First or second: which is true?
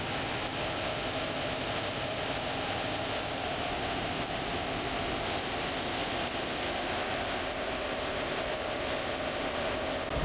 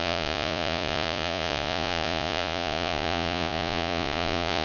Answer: first